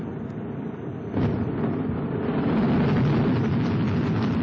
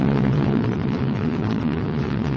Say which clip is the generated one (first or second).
second